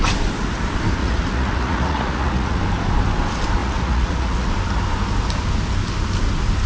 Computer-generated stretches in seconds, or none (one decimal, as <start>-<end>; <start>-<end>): 1.0-2.6; 3.6-4.5